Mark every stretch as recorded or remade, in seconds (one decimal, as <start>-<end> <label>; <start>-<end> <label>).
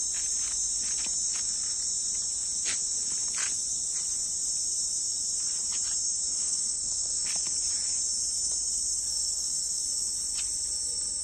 0.0-6.4 recorded; 6.4-7.3 remade; 7.3-9.1 recorded; 9.1-9.8 remade; 9.8-11.2 recorded